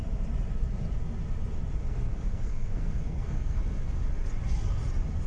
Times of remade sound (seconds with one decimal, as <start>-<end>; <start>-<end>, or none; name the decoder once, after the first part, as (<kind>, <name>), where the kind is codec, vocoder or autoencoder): 1.8-3.6 (codec, SNAC)